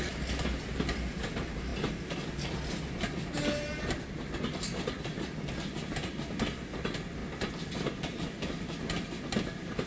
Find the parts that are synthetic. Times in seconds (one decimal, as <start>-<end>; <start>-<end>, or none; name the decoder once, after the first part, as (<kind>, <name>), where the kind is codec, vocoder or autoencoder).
none